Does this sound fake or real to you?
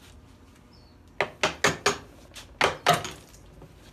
real